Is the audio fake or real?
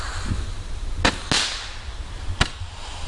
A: real